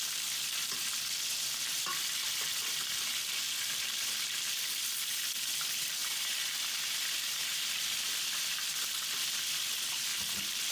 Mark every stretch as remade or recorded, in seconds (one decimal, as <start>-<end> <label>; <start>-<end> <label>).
0.0-10.1 remade; 10.1-10.7 recorded